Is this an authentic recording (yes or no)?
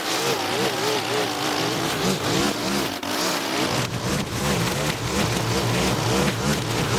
yes